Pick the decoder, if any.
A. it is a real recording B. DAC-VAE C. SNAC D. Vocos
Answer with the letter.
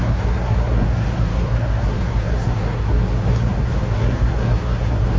C